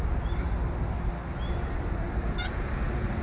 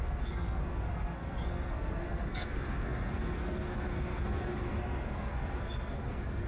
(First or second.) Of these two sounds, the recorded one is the first